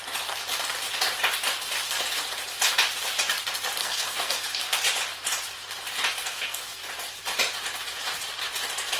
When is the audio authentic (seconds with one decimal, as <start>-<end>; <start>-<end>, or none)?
0.0-3.8; 4.8-6.2; 6.8-9.0